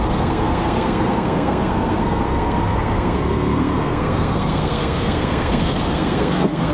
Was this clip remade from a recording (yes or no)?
yes